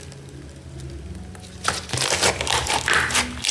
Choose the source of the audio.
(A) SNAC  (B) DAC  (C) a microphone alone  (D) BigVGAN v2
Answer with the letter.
C